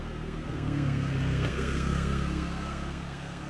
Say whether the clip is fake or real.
fake